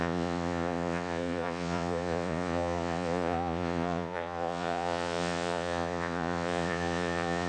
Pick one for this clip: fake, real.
fake